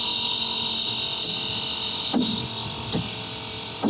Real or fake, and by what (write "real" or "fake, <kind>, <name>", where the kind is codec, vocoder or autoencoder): real